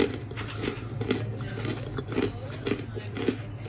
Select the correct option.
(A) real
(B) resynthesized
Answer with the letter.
A